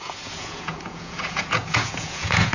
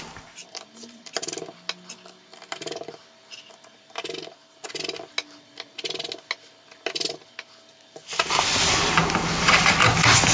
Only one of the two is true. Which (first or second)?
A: second